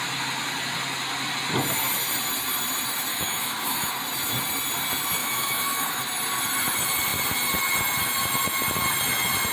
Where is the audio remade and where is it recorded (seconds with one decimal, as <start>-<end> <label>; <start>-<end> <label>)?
0.0-3.1 recorded; 3.1-3.9 remade; 3.9-5.2 recorded; 5.2-6.0 remade; 6.0-9.5 recorded